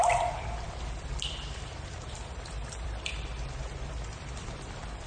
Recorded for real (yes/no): no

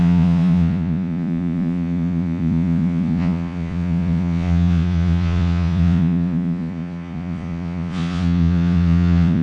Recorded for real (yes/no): no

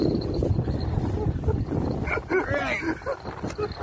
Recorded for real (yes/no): yes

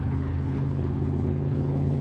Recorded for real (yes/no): no